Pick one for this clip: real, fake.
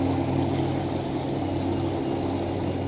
real